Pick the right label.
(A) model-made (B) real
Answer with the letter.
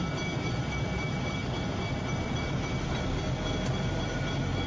B